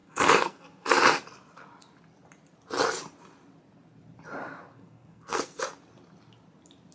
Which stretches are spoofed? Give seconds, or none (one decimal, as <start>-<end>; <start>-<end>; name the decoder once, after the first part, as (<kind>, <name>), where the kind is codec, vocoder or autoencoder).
0.0-1.0 (codec, SNAC); 4.7-5.6

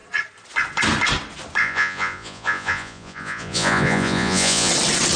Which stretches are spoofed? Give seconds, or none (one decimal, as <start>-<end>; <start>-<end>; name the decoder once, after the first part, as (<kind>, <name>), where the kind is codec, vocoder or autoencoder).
1.6-4.7 (vocoder, Vocos)

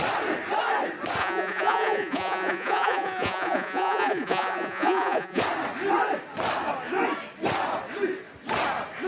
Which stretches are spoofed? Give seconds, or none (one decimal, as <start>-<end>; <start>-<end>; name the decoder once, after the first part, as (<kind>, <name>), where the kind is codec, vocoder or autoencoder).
1.2-5.4 (vocoder, Vocos)

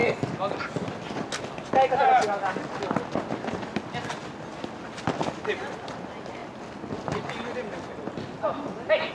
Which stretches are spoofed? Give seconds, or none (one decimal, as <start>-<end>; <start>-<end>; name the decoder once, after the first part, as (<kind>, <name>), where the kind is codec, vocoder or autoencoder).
none

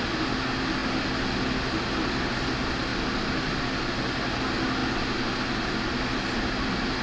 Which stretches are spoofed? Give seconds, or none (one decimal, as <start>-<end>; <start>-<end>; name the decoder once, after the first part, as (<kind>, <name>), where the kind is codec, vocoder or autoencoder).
none

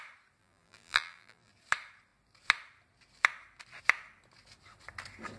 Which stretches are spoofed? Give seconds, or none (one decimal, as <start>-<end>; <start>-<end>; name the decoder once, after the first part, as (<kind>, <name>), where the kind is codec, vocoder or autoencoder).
0.4-1.5 (vocoder, BigVGAN v2)